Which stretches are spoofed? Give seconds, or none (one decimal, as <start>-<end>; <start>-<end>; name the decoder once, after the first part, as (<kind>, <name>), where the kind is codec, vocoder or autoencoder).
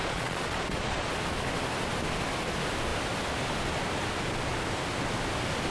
0.0-1.1 (vocoder, Vocos)